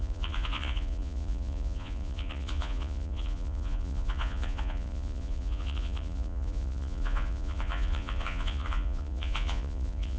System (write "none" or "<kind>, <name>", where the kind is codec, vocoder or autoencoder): vocoder, Vocos